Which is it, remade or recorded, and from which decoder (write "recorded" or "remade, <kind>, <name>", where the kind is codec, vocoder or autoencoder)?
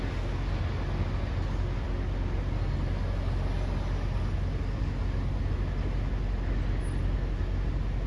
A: recorded